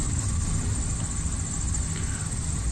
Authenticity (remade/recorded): recorded